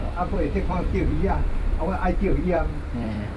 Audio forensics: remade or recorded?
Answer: remade